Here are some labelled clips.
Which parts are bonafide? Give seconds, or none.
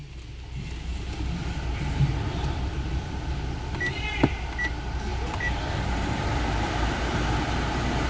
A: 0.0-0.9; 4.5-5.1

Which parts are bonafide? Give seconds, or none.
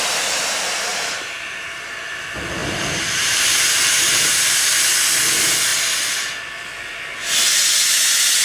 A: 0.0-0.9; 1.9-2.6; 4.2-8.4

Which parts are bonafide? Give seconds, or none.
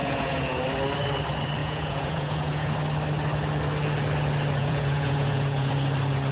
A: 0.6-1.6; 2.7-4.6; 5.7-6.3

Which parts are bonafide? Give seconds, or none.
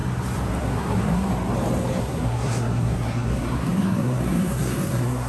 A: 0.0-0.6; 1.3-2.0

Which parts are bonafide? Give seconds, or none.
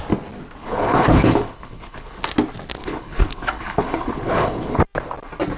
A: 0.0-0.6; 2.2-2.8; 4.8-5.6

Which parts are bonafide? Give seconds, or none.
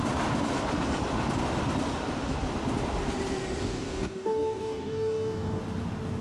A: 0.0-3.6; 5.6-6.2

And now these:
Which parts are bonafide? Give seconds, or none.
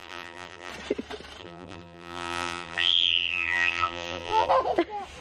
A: 0.7-1.4; 4.5-5.2